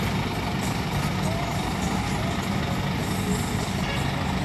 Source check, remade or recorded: recorded